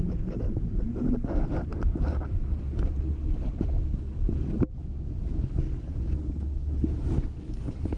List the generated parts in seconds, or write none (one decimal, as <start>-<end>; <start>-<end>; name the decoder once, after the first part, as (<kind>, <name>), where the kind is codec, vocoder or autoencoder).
0.0-1.7 (codec, DAC); 3.9-6.6; 7.4-8.0